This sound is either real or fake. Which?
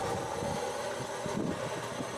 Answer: real